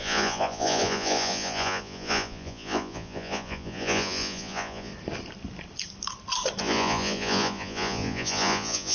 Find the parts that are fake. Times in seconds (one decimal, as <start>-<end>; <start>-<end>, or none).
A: 0.0-4.9; 6.6-8.9

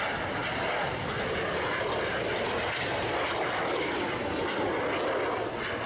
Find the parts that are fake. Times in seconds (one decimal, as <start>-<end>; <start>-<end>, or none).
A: none

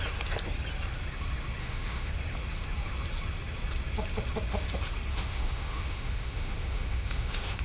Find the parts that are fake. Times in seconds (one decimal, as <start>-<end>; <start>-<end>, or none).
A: 1.6-2.1; 5.1-7.6